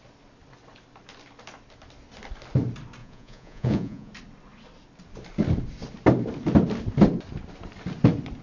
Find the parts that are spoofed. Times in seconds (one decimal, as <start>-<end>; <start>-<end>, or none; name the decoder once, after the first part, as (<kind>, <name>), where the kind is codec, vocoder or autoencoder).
3.0-4.1 (vocoder, Vocos)